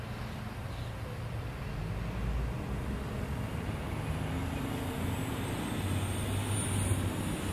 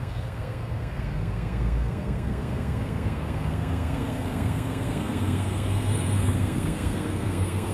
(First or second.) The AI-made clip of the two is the second